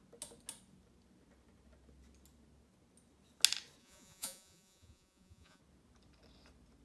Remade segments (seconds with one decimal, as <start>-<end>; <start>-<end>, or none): 3.8-5.6